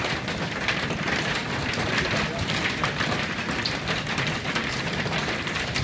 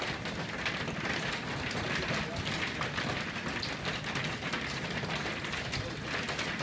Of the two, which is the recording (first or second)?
second